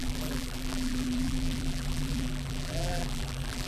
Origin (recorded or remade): remade